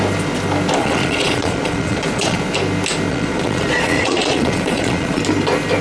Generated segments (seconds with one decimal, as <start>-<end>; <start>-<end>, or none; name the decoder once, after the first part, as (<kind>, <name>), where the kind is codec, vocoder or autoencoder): 0.8-2.4 (vocoder, Vocos); 3.1-5.2

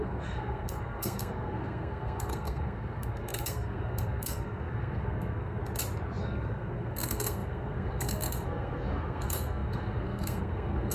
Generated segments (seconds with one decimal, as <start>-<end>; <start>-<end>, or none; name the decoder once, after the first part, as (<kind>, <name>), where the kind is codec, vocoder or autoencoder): 0.0-5.6 (codec, SNAC); 6.2-10.9

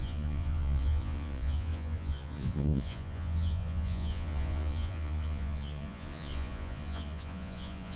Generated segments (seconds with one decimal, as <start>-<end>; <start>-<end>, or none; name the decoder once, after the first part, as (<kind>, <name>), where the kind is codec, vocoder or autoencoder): 0.0-8.0 (vocoder, Vocos)

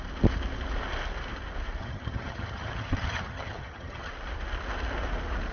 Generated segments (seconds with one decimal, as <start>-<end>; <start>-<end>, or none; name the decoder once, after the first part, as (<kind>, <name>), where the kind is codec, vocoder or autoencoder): 1.8-4.1 (vocoder, HiFi-GAN)